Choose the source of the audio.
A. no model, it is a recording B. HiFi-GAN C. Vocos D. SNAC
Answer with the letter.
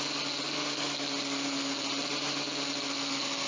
A